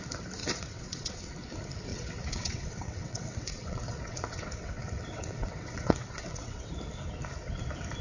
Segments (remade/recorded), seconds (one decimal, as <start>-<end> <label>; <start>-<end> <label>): 0.0-0.4 recorded; 0.4-1.3 remade; 1.3-1.9 recorded; 1.9-6.7 remade; 6.7-8.0 recorded

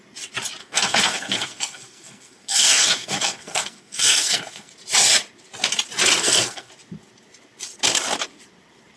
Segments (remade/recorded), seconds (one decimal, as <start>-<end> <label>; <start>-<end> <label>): 0.0-0.6 recorded; 0.6-4.7 remade; 4.7-6.2 recorded; 6.2-6.7 remade; 6.7-9.0 recorded

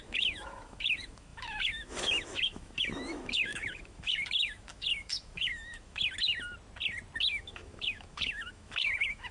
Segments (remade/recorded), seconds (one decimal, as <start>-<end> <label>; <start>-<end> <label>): 0.0-6.0 remade; 6.0-7.2 recorded; 7.2-9.3 remade

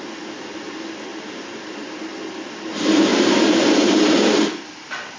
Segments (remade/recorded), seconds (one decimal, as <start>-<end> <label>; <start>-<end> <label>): 0.0-1.1 recorded; 1.1-2.0 remade; 2.0-3.1 recorded; 3.1-4.2 remade; 4.2-5.2 recorded

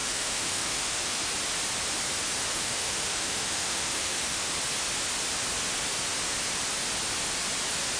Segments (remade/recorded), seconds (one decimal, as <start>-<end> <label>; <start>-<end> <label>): 0.0-1.2 remade; 1.2-2.5 recorded; 2.5-4.5 remade; 4.5-8.0 recorded